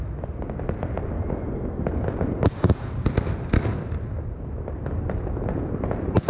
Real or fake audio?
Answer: real